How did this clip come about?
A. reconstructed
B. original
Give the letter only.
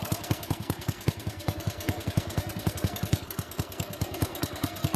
A